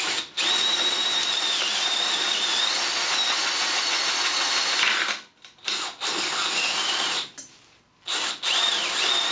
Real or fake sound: real